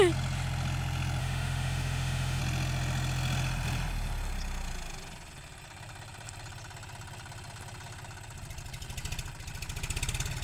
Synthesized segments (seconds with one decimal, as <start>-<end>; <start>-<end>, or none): 1.2-2.4